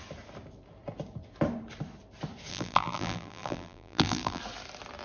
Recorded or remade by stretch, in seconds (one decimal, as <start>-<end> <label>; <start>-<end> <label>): 0.0-2.5 recorded; 2.5-4.4 remade; 4.4-5.0 recorded